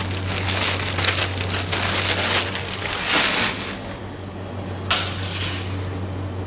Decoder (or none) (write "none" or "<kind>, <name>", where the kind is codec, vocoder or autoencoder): none